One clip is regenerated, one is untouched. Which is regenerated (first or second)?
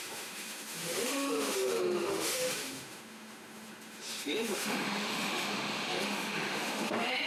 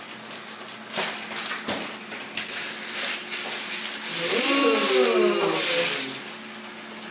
first